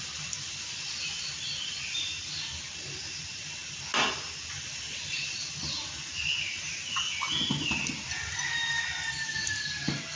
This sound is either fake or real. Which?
real